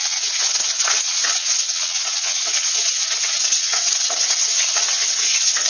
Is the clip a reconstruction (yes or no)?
yes